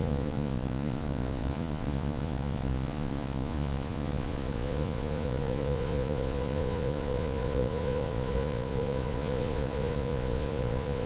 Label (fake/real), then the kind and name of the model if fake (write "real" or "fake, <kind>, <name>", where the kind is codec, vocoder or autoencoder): fake, vocoder, Vocos